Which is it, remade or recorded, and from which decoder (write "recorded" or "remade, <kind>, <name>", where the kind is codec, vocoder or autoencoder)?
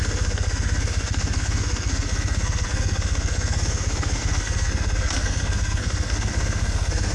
remade, codec, SNAC